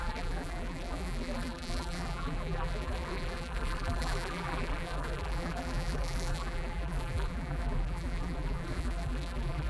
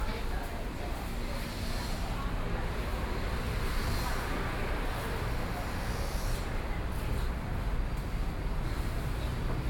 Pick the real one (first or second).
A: second